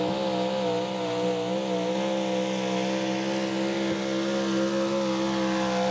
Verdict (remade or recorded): recorded